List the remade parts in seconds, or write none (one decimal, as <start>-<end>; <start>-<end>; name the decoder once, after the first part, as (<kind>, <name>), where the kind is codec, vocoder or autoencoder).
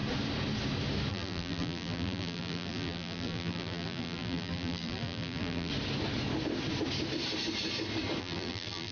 1.1-5.7 (vocoder, BigVGAN v2); 8.2-8.9